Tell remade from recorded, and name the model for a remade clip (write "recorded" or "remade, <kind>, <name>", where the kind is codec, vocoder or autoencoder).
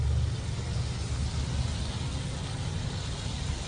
recorded